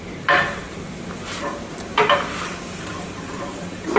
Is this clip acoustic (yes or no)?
no